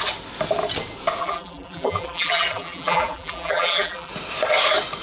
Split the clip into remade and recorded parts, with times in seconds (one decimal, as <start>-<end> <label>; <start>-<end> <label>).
0.0-1.2 recorded; 1.2-4.1 remade; 4.1-5.0 recorded